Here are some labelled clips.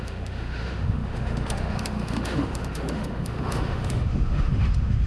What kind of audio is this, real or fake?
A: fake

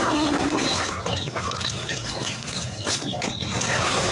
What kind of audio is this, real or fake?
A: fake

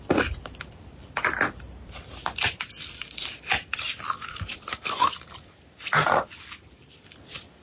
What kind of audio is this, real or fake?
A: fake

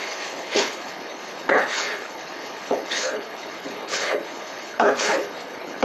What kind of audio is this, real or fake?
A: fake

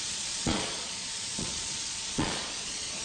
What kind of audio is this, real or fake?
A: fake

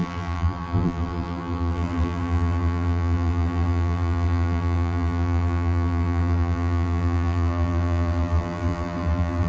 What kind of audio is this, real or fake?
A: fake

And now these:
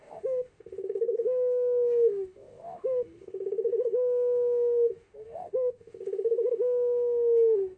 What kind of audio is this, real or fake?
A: fake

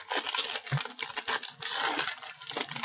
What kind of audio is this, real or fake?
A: fake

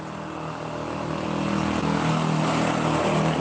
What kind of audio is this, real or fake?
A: real